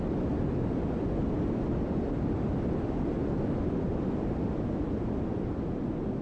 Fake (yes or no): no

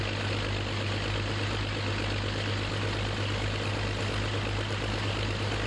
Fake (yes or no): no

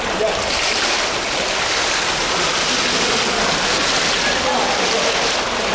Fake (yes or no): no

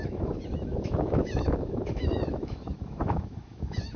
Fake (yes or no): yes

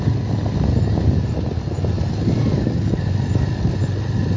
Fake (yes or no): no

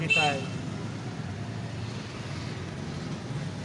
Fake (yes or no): no